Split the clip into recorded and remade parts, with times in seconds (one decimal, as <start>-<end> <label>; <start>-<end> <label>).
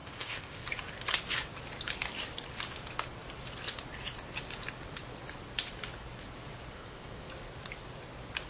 0.0-0.7 remade; 0.7-6.7 recorded; 6.7-7.3 remade; 7.3-8.5 recorded